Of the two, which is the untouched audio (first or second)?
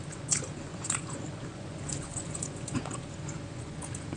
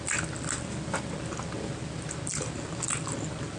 second